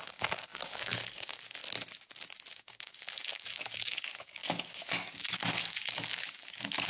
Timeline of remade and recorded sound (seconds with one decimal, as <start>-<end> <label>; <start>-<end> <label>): 0.0-1.6 remade; 1.6-2.5 recorded; 2.5-6.9 remade